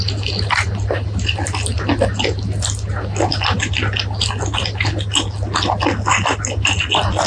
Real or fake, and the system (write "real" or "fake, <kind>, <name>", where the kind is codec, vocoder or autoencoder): real